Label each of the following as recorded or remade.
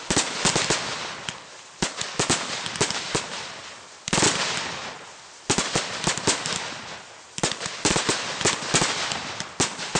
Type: recorded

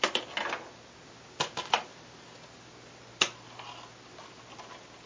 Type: recorded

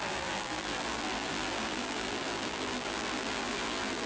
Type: remade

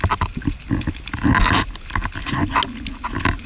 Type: recorded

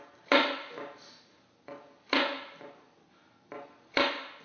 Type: recorded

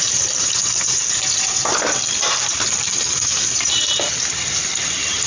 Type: remade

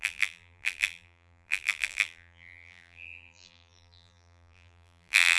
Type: remade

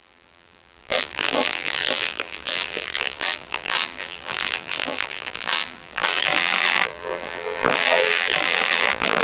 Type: remade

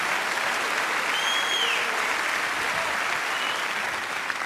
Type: recorded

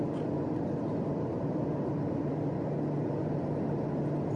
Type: recorded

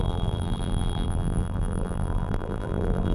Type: remade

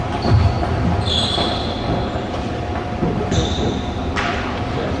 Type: remade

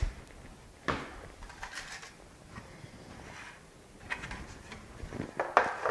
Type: recorded